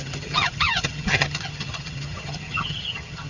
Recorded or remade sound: remade